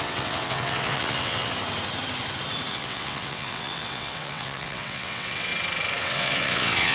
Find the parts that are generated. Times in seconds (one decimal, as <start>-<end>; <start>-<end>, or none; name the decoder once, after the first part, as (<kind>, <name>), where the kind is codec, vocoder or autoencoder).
0.0-1.5 (vocoder, WaveNeXt); 2.7-5.5; 6.0-6.9